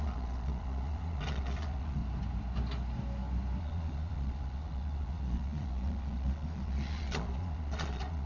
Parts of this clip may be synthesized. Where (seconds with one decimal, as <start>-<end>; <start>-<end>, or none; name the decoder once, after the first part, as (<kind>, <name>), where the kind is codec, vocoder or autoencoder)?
0.0-2.0 (vocoder, Vocos); 3.6-8.3